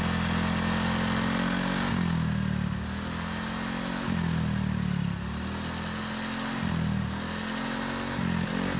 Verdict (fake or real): real